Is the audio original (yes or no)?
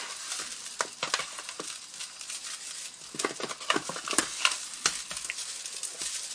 yes